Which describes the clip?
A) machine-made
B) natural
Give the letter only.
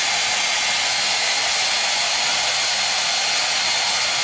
B